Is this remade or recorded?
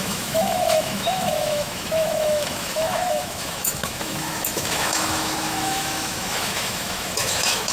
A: remade